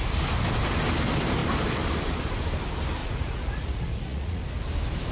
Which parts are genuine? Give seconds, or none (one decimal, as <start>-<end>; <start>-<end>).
0.0-3.0; 4.4-5.1